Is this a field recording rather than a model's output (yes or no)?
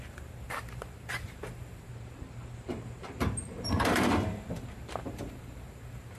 no